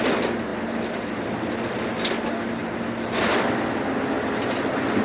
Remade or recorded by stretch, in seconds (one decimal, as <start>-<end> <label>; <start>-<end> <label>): 0.0-5.0 recorded